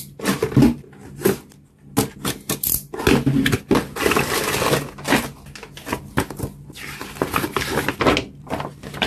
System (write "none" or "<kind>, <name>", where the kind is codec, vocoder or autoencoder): none